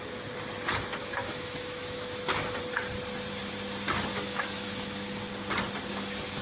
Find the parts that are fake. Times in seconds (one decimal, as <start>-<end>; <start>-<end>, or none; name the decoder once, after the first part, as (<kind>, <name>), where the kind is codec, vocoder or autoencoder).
1.0-2.6 (autoencoder, DAC-VAE); 4.1-5.2